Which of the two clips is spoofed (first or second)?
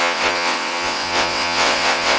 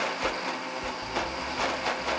first